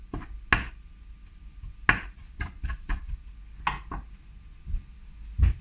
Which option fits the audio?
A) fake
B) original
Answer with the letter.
B